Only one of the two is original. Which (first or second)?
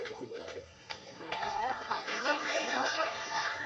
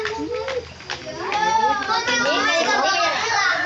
second